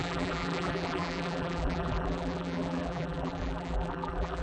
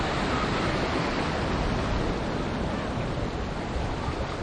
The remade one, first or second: first